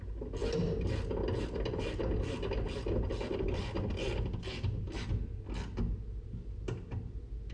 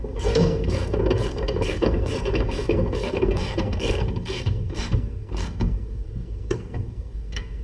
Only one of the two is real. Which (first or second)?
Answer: first